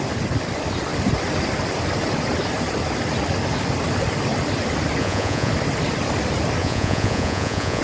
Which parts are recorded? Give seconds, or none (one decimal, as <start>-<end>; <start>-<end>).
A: 0.0-5.0; 5.5-6.6